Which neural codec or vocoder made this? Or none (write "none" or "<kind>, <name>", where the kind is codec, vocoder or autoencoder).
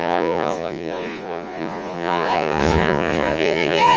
vocoder, Vocos